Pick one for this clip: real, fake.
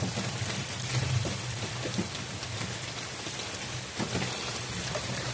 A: real